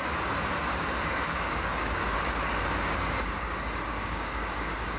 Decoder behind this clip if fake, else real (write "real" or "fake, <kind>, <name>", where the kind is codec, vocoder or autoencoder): fake, codec, DAC